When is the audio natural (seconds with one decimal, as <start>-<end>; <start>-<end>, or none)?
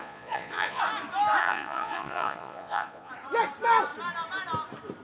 0.8-1.4; 3.1-5.0